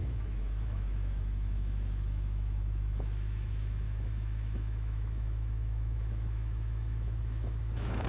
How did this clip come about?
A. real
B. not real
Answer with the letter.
B